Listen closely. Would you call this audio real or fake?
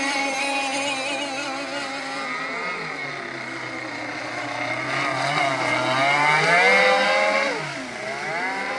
real